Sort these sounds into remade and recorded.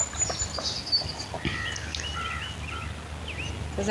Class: recorded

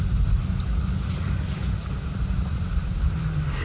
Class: recorded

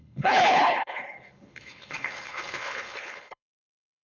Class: remade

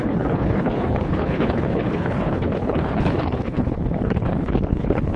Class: remade